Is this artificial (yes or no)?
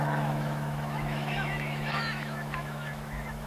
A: yes